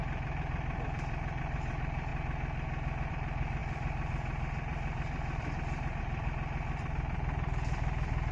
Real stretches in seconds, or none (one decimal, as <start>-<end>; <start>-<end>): 2.1-3.1